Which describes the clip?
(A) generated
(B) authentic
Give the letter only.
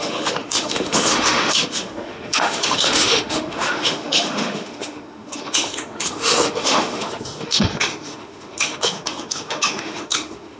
A